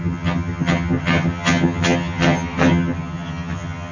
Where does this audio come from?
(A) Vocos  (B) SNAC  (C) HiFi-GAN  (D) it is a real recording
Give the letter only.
C